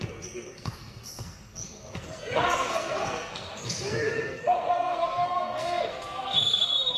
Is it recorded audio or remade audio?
remade